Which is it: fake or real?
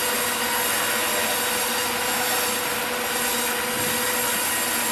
real